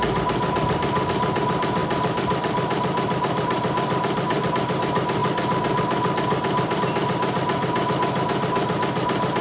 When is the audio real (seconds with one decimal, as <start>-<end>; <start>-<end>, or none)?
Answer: 0.0-1.8; 4.5-9.4